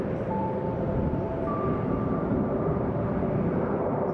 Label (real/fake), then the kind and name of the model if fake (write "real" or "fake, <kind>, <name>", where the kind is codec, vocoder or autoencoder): fake, vocoder, BigVGAN v2